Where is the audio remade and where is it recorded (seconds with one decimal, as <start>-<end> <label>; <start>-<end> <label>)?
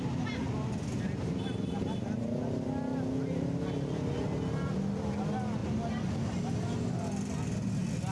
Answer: 0.0-8.1 recorded